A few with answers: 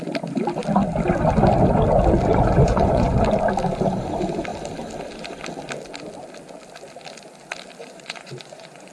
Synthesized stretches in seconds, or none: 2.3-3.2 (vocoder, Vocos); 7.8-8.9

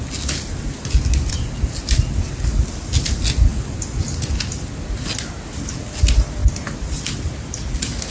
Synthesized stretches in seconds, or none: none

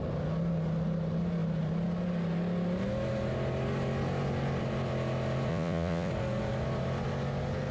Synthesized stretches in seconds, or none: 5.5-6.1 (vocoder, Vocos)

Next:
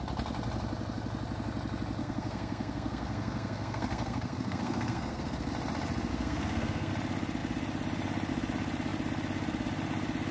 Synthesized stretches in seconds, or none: 2.0-5.5 (codec, SNAC); 6.1-6.9